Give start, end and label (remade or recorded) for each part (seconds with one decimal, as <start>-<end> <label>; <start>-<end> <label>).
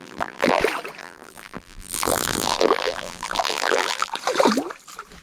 0.0-0.6 remade; 0.6-1.0 recorded; 1.0-4.1 remade; 4.1-5.2 recorded